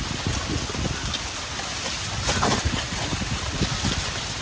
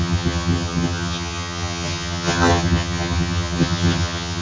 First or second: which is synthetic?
second